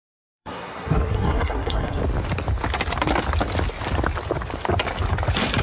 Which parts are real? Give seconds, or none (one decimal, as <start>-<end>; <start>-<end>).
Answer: 2.0-5.6